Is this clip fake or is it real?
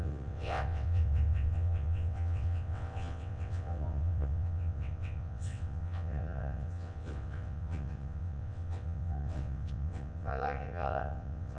fake